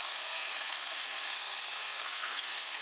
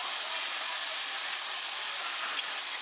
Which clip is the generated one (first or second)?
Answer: first